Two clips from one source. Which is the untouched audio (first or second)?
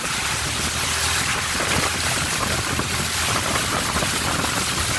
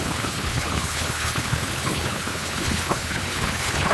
first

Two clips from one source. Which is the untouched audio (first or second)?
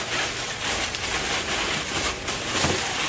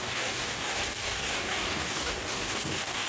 first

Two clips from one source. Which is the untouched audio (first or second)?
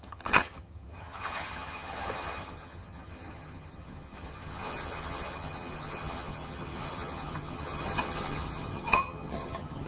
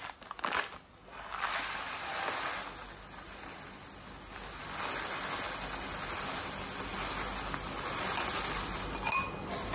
second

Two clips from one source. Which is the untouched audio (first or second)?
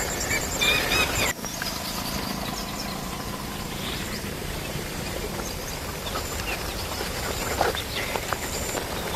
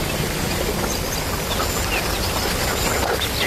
second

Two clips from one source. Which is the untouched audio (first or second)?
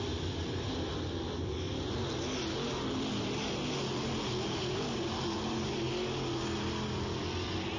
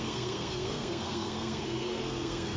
first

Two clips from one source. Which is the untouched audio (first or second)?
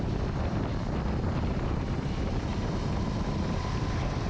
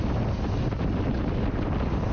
second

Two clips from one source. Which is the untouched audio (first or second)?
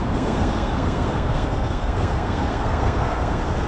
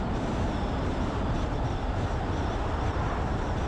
second